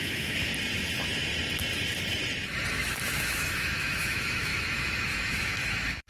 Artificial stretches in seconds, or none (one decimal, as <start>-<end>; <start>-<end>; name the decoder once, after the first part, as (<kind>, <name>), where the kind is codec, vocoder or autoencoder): 0.0-0.5 (autoencoder, DAC-VAE); 2.7-6.1